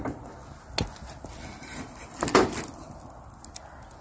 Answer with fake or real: real